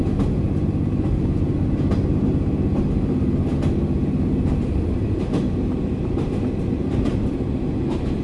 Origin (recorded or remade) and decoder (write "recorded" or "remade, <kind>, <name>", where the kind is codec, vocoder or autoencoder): recorded